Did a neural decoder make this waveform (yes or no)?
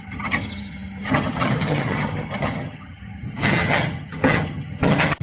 yes